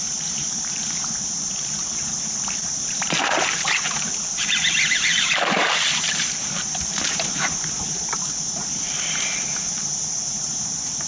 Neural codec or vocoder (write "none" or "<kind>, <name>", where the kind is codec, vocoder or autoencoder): vocoder, BigVGAN v2